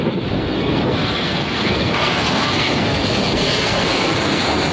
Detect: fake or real fake